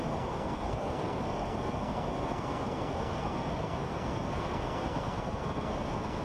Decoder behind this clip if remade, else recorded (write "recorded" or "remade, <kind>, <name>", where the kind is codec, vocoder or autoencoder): remade, codec, SNAC